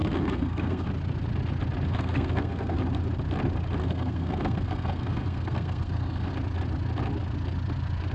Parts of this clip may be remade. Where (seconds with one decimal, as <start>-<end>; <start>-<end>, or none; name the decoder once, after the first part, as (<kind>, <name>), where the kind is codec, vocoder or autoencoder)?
0.0-0.9 (codec, SNAC); 1.9-2.8; 3.8-6.3